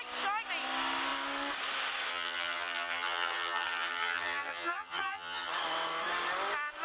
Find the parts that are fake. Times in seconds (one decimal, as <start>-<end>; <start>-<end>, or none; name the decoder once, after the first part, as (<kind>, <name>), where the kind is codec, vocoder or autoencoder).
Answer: 2.1-5.5 (vocoder, HiFi-GAN)